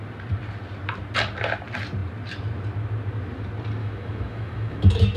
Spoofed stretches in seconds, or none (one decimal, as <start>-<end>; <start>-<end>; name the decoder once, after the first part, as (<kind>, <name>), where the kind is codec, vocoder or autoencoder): 3.8-5.2 (autoencoder, DAC-VAE)